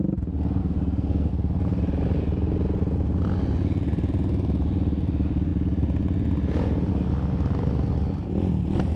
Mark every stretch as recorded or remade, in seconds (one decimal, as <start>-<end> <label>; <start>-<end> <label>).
0.0-0.6 recorded; 0.6-1.3 remade; 1.3-9.0 recorded